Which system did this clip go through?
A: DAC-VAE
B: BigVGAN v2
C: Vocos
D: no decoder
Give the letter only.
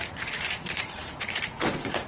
C